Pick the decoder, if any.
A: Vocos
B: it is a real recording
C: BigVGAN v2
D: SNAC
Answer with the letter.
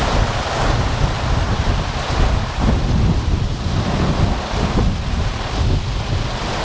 B